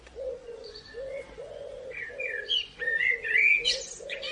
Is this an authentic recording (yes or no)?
no